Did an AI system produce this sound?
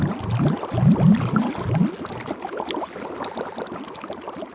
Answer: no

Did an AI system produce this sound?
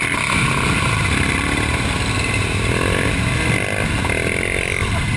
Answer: no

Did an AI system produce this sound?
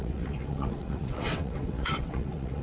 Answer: yes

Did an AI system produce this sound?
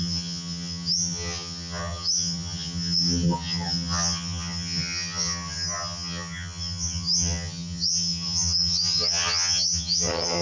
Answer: yes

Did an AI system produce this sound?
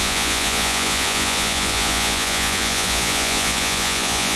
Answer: yes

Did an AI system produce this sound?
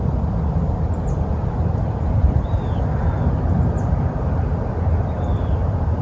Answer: no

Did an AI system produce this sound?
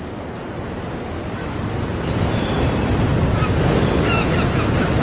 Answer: no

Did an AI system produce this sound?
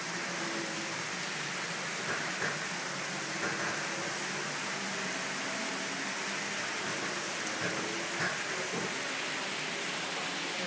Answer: no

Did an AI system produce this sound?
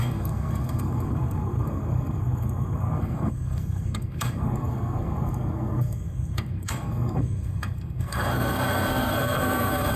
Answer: yes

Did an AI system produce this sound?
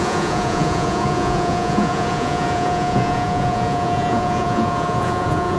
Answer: yes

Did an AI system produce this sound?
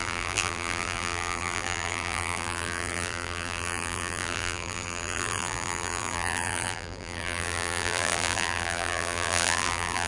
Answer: yes